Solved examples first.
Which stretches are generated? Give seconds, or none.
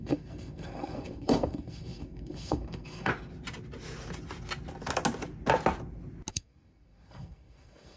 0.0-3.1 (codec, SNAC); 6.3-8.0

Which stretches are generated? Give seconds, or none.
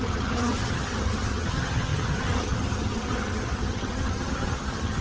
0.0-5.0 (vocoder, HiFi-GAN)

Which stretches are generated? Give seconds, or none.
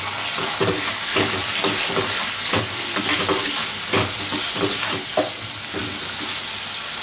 none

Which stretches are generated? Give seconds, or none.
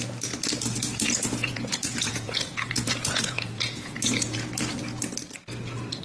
0.9-4.5 (vocoder, Vocos)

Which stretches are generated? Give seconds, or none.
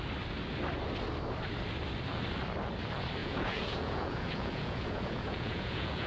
3.2-6.1 (vocoder, Vocos)